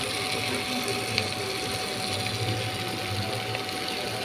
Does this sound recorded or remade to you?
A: recorded